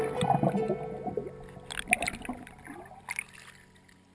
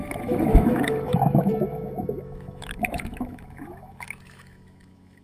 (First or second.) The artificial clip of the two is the second